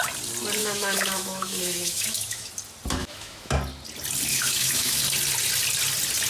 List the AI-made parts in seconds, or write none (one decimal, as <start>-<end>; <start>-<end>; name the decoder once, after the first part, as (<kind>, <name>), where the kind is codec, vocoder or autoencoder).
0.6-2.5 (autoencoder, DAC-VAE); 3.0-3.5; 4.3-5.0